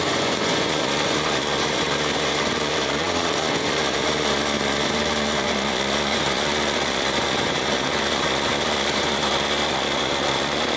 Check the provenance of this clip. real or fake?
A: fake